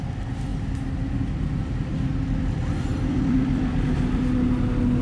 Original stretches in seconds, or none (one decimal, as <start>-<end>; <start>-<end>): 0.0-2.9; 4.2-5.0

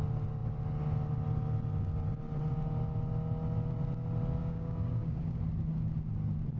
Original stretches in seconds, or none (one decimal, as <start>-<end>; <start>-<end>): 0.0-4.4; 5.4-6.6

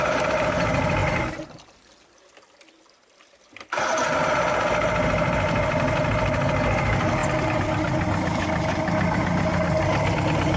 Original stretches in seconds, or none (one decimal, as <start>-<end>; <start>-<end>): 0.0-10.6

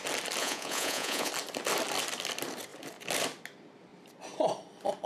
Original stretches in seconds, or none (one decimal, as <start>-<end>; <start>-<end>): 0.0-0.4; 1.3-5.1